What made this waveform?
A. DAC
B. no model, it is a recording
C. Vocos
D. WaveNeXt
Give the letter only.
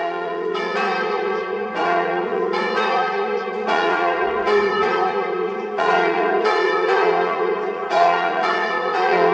C